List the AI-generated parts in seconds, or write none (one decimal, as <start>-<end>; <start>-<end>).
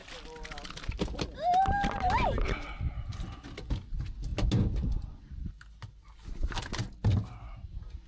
none